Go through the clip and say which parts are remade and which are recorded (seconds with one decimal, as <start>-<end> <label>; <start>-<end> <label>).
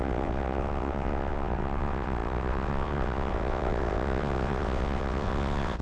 0.0-5.8 remade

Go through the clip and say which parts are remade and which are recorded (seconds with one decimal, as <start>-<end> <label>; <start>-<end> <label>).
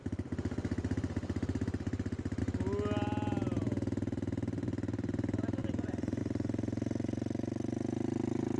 0.0-5.6 recorded; 5.6-6.2 remade; 6.2-8.6 recorded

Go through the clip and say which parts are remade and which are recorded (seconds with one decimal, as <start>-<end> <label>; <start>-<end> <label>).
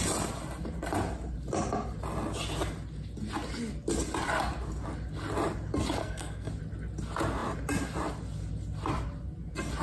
0.0-6.0 recorded; 6.0-6.5 remade; 6.5-9.8 recorded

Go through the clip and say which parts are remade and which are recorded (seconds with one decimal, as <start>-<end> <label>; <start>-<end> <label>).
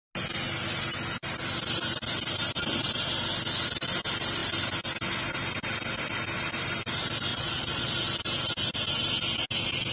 0.0-7.3 recorded; 7.3-7.9 remade; 7.9-9.9 recorded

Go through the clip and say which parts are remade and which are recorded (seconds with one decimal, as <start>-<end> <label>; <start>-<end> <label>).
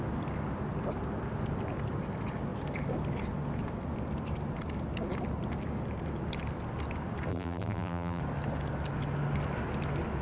0.0-7.3 recorded; 7.3-8.2 remade; 8.2-10.2 recorded